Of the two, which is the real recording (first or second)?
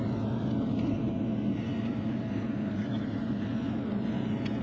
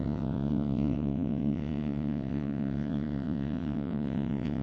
first